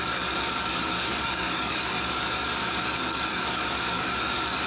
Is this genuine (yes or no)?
no